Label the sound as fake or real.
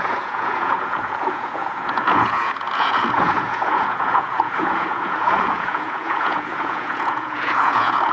fake